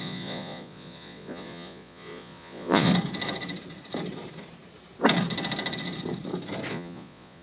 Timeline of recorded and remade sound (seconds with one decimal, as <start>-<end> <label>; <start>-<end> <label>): 0.0-2.9 remade; 2.9-6.7 recorded; 6.7-7.4 remade